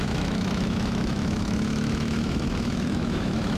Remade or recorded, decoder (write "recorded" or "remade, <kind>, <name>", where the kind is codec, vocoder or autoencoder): remade, autoencoder, DAC-VAE